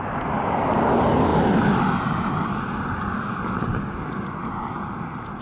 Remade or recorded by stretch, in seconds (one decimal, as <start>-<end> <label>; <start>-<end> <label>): 0.0-5.4 recorded